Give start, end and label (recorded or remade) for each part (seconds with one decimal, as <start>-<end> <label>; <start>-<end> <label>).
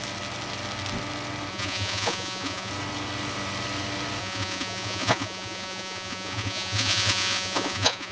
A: 0.0-1.5 recorded; 1.5-2.7 remade; 2.7-4.2 recorded; 4.2-8.1 remade